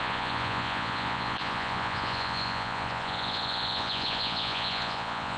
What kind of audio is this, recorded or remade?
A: remade